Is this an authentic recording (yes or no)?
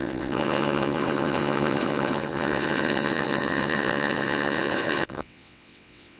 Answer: no